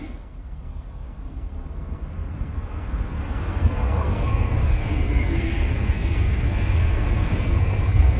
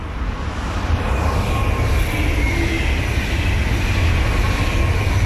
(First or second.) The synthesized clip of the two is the first